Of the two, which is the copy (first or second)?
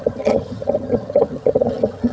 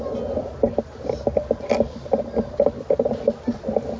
first